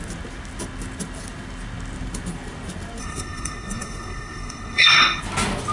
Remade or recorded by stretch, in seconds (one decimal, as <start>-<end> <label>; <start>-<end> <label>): 0.0-3.0 recorded; 3.0-5.2 remade; 5.2-5.7 recorded